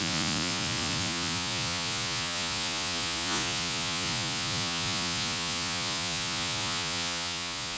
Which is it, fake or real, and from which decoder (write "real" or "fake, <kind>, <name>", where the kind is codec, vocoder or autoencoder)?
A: fake, vocoder, Vocos